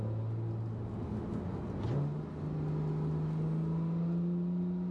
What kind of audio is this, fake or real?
real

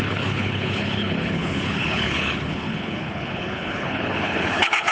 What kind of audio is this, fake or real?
fake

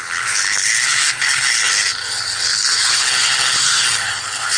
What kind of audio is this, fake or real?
fake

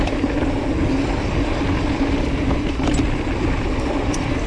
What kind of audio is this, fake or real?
real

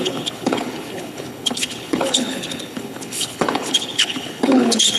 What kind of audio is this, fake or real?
fake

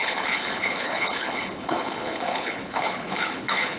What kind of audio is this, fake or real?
fake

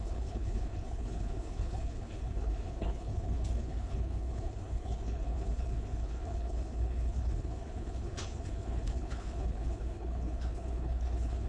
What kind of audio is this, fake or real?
fake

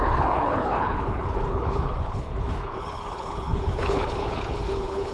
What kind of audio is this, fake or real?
fake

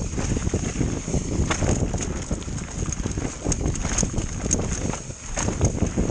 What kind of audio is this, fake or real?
real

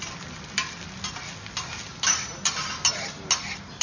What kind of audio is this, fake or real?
real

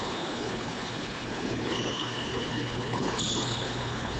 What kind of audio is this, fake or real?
fake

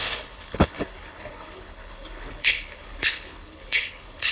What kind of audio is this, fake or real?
fake